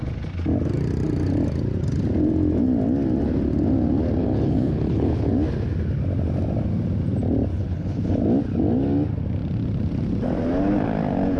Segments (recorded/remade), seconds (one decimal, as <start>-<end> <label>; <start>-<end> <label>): 0.0-4.2 recorded; 4.2-5.3 remade; 5.3-7.5 recorded; 7.5-8.2 remade; 8.2-11.4 recorded